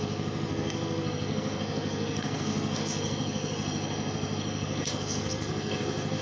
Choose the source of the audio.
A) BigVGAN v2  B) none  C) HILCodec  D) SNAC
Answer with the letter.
D